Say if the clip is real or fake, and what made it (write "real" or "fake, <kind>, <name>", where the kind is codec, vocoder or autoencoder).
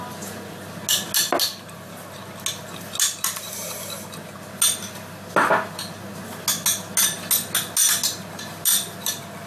real